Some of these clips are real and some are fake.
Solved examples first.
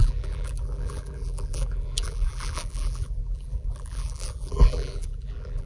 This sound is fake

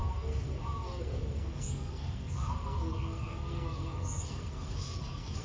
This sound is fake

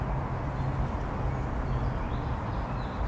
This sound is real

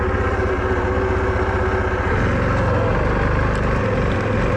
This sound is real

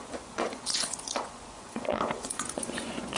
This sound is fake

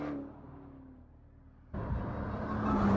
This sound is real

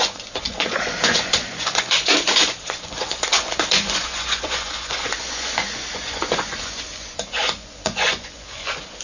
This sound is fake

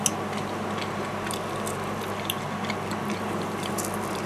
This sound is real